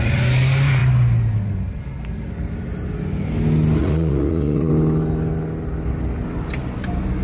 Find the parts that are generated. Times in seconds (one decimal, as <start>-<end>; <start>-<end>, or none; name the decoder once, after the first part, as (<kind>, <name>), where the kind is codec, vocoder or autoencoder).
3.8-4.7 (vocoder, Vocos)